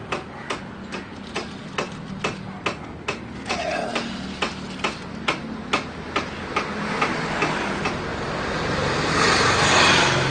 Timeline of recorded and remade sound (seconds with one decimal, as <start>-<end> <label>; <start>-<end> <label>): 0.0-10.3 recorded

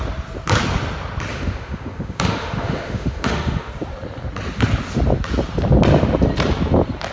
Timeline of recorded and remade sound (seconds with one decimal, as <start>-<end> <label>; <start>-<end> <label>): 0.0-1.3 recorded; 1.3-3.7 remade; 3.7-7.1 recorded

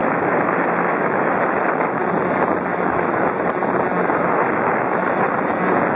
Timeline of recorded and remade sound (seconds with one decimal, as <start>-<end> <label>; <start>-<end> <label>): 0.0-2.0 remade; 2.0-2.7 recorded; 2.7-3.3 remade; 3.3-4.0 recorded; 4.0-5.0 remade; 5.0-5.9 recorded

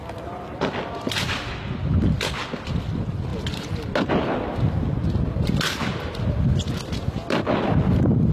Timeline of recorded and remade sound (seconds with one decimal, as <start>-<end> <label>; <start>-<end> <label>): 0.0-8.3 recorded

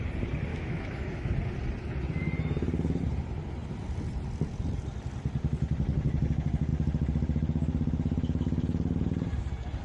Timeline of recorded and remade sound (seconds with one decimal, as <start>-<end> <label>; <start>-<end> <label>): 0.0-0.5 recorded; 0.5-1.3 remade; 1.3-9.8 recorded

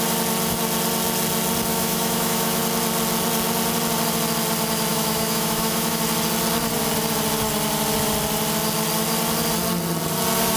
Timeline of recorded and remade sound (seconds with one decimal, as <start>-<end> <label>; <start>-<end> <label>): 0.0-1.7 recorded; 1.7-2.6 remade; 2.6-4.9 recorded; 4.9-6.0 remade; 6.0-10.6 recorded